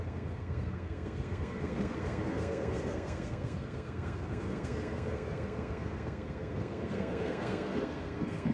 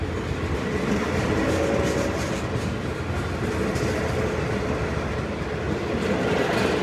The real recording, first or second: second